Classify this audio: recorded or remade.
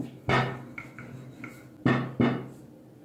recorded